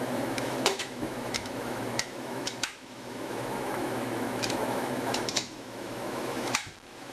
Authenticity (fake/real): fake